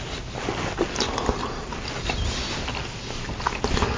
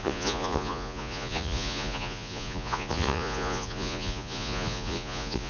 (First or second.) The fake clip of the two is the second